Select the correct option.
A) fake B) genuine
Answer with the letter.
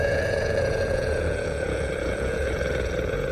A